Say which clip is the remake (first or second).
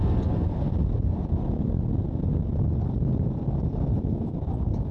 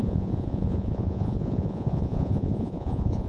second